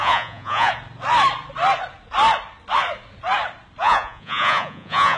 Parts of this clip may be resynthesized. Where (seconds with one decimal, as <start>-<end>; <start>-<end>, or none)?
0.0-0.7; 3.8-5.2